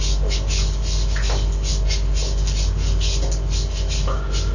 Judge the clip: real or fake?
real